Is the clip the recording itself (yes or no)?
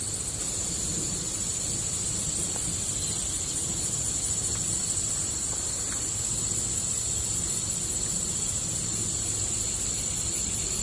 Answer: yes